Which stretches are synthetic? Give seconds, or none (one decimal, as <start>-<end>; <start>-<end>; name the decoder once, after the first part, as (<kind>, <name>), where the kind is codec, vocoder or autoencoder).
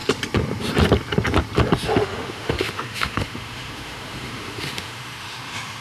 1.9-5.8 (autoencoder, DAC-VAE)